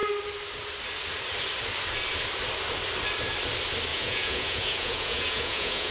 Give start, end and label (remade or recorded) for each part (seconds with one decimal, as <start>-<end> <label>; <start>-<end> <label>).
0.0-3.9 recorded; 3.9-5.9 remade